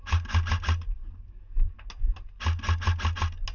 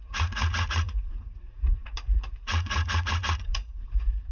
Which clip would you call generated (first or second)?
second